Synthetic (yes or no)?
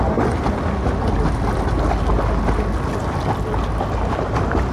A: no